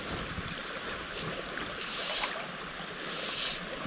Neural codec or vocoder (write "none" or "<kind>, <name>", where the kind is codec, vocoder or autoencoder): none